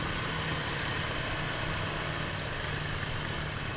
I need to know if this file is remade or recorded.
recorded